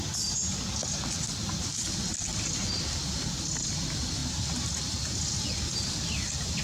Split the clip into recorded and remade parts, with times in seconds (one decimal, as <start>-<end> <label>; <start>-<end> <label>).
0.0-6.6 recorded